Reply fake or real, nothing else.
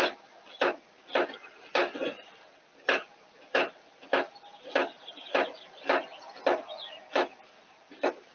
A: real